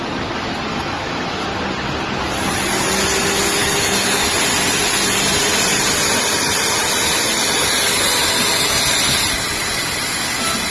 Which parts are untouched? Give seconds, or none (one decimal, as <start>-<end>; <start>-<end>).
0.0-0.7; 1.5-3.6; 4.3-10.7